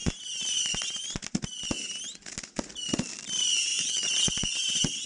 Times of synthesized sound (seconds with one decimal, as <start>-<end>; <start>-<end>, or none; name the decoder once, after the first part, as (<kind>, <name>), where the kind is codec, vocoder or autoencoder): 3.7-4.3 (vocoder, Vocos)